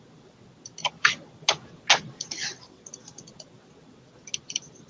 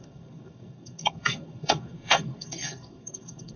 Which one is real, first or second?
first